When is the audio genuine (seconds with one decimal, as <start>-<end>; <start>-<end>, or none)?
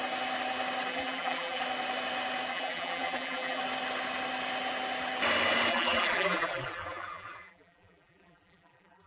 0.0-0.9; 1.6-2.5; 3.6-5.7